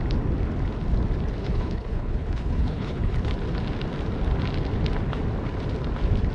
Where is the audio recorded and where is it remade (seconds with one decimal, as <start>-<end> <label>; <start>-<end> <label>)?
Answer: 0.0-1.4 recorded; 1.4-3.1 remade; 3.1-6.3 recorded